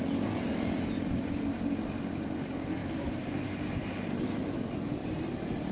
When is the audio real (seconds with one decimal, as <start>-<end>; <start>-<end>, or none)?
0.0-2.8; 4.6-5.0